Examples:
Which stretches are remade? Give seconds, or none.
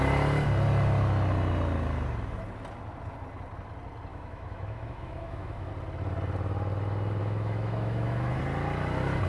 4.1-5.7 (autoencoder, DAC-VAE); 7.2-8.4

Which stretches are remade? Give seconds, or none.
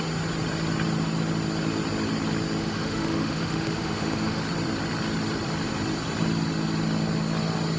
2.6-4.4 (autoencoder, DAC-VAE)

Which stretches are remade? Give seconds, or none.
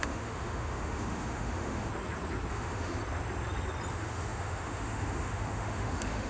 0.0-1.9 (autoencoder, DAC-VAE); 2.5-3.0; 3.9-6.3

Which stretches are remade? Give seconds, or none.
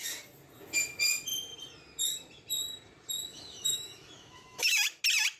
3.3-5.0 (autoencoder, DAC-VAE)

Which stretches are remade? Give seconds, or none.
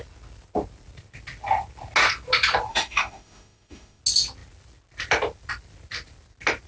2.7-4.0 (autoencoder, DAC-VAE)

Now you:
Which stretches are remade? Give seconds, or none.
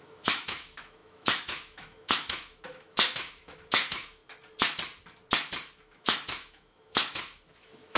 0.0-4.2 (autoencoder, DAC-VAE); 5.8-8.0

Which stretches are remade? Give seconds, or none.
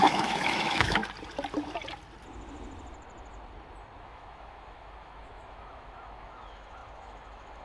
0.0-1.0 (autoencoder, DAC-VAE); 4.0-7.6